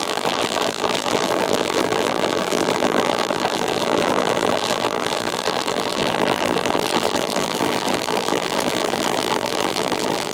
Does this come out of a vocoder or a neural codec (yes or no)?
yes